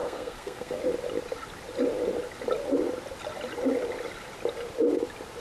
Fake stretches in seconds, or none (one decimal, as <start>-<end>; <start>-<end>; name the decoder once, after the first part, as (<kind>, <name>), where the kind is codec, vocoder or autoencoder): 0.0-0.8 (codec, SNAC)